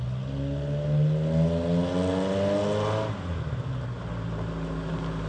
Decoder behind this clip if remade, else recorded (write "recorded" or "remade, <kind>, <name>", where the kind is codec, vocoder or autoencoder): recorded